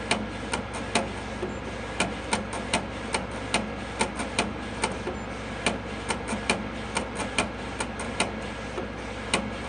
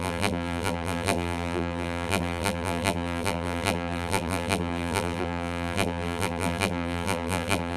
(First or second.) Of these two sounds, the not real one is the second